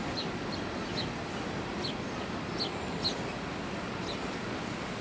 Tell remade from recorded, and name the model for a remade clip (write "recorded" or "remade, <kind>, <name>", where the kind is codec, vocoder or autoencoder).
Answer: recorded